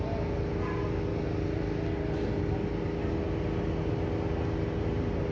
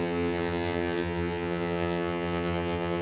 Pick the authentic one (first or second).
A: first